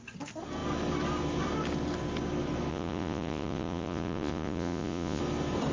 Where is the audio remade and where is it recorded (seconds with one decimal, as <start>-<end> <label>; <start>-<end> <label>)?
0.0-2.7 recorded; 2.7-5.2 remade; 5.2-5.7 recorded